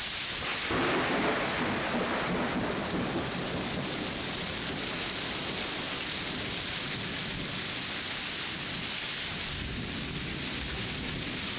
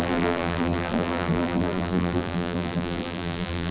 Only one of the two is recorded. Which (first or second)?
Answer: first